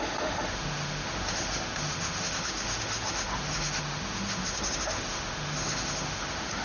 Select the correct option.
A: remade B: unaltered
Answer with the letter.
A